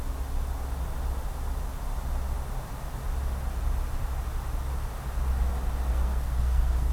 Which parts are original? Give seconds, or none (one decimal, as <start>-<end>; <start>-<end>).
0.0-5.9